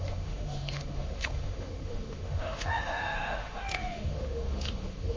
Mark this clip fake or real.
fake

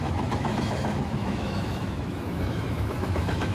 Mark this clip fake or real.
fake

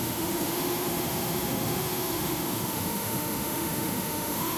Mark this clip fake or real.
fake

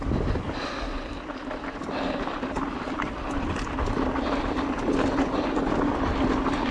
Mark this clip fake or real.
real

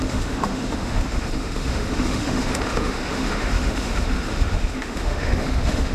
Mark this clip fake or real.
fake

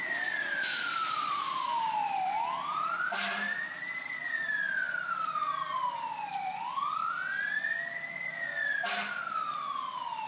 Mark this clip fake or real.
real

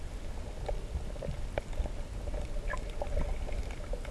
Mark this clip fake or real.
real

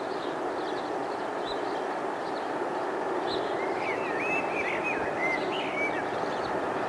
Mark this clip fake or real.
real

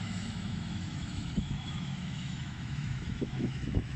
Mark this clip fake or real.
fake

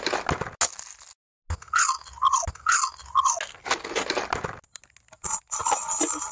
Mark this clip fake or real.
real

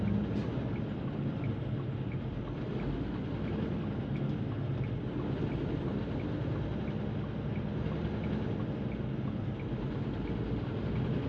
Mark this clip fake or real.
real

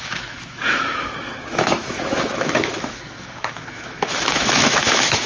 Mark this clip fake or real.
fake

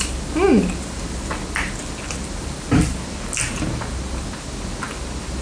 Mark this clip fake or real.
real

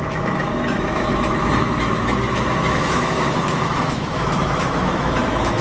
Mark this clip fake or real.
fake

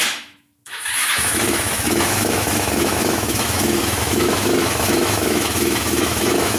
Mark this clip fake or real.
fake